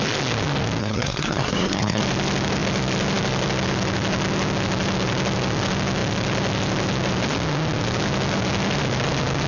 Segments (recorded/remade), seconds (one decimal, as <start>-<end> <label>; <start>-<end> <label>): 0.0-0.8 recorded; 0.8-2.0 remade; 2.0-9.5 recorded